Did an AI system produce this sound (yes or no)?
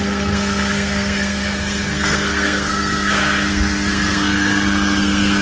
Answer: yes